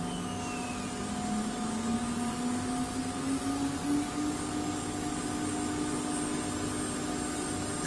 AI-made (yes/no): no